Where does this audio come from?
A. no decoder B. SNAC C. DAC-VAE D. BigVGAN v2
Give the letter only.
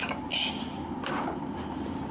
A